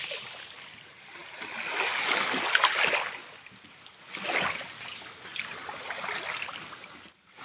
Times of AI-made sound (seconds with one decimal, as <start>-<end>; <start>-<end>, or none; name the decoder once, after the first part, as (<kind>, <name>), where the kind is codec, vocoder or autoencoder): none